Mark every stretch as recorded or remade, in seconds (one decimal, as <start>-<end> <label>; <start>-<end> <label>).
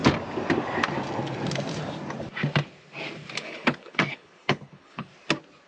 0.0-3.4 recorded; 3.4-5.1 remade; 5.1-5.7 recorded